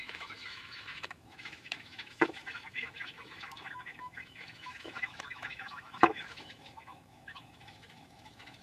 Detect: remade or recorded remade